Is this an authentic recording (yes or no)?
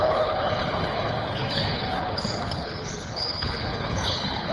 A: no